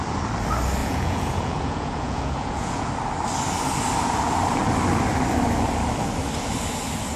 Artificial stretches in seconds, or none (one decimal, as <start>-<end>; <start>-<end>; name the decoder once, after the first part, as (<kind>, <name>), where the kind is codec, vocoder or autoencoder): 0.8-2.9 (vocoder, Vocos)